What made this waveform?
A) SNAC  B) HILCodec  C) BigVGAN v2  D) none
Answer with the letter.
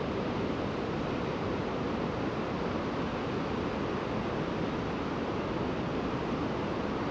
D